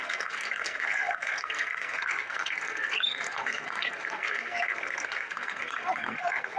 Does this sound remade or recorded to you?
remade